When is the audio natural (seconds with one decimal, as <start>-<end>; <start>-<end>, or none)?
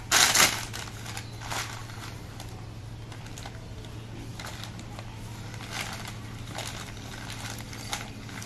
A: 0.0-8.5